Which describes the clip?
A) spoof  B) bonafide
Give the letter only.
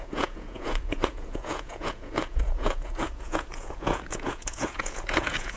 A